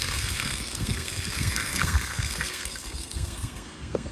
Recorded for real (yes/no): no